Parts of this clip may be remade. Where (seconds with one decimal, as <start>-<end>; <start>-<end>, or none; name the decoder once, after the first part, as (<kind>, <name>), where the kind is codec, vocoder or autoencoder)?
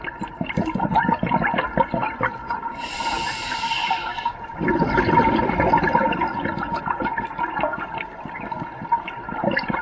2.0-3.0 (vocoder, BigVGAN v2); 4.1-4.8